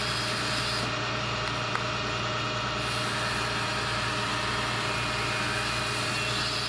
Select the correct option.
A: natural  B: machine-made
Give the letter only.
A